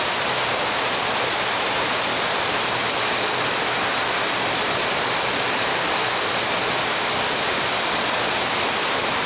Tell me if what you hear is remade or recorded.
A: recorded